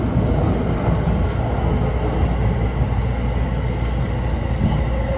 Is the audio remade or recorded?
recorded